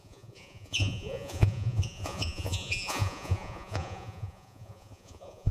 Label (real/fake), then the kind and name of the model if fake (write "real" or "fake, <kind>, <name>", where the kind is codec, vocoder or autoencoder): fake, vocoder, Vocos